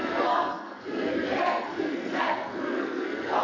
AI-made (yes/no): yes